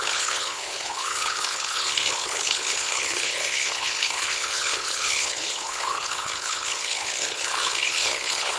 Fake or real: fake